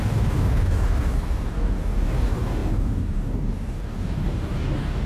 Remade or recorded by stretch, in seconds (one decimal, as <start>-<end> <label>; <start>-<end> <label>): 0.0-5.1 remade